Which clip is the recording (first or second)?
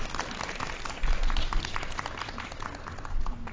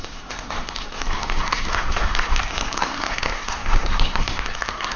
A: first